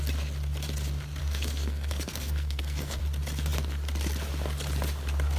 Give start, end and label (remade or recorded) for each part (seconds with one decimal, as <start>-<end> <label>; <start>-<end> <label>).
0.0-1.2 recorded; 1.2-3.0 remade; 3.0-5.4 recorded